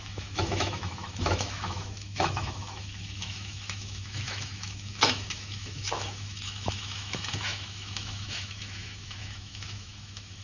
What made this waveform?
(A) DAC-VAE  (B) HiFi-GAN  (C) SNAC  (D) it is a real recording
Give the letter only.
A